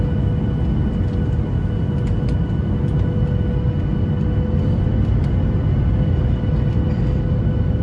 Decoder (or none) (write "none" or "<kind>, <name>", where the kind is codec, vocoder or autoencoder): none